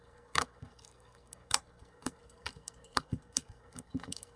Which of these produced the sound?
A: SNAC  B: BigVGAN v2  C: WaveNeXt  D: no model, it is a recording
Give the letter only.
A